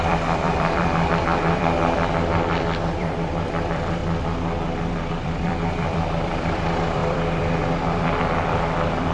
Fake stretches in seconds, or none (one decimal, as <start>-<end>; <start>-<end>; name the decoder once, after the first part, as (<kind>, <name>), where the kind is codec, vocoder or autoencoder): 0.0-4.0 (vocoder, BigVGAN v2); 5.1-9.1